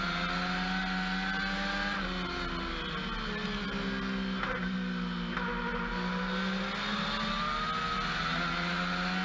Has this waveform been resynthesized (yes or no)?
no